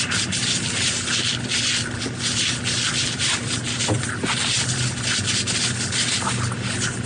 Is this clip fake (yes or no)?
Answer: no